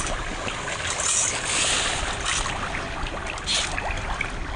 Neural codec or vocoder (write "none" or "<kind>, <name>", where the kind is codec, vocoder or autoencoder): none